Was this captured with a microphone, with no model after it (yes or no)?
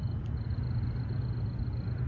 yes